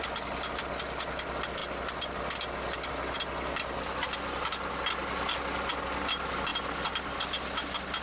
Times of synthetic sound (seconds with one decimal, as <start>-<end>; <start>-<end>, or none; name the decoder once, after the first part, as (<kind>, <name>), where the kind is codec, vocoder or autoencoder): none